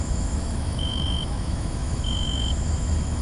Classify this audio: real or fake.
fake